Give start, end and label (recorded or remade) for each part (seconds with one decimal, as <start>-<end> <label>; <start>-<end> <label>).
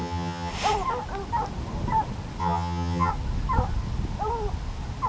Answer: 0.0-0.5 remade; 0.5-2.4 recorded; 2.4-3.1 remade; 3.1-5.1 recorded